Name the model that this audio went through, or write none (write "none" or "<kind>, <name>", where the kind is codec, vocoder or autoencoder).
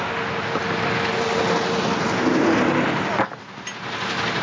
none